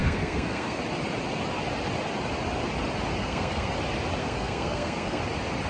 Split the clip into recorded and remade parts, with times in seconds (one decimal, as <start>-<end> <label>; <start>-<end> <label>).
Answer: 0.0-0.8 remade; 0.8-3.2 recorded; 3.2-3.7 remade; 3.7-4.2 recorded; 4.2-5.2 remade; 5.2-5.7 recorded